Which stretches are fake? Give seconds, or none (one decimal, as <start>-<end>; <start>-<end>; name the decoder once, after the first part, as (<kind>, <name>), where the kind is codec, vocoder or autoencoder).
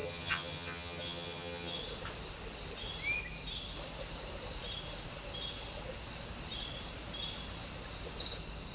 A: 0.0-1.8 (vocoder, HiFi-GAN)